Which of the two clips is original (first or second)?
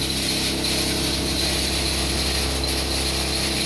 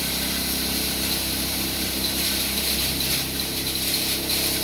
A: first